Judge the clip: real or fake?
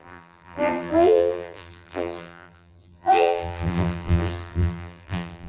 fake